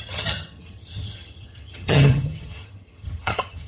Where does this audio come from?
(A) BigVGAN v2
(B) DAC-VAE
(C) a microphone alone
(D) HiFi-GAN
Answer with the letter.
D